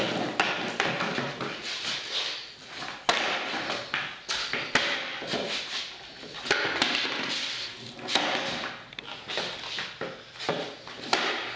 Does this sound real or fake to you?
real